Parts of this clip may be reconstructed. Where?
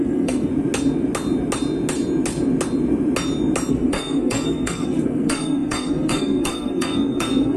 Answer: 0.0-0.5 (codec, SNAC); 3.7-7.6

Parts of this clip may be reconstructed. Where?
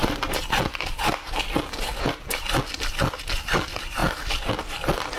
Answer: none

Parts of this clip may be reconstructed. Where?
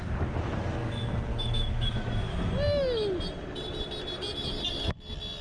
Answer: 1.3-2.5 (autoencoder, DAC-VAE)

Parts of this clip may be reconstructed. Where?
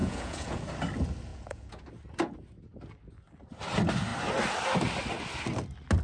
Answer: 0.0-0.6 (vocoder, Vocos); 1.3-1.9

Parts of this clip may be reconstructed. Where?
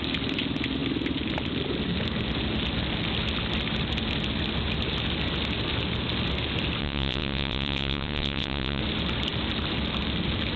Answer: 6.8-8.8 (vocoder, WaveNeXt)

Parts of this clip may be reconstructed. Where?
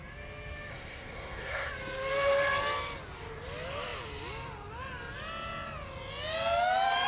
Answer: 0.7-1.7 (codec, SNAC)